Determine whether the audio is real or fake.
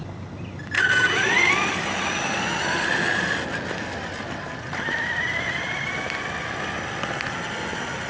real